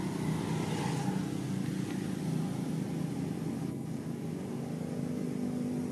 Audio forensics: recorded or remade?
recorded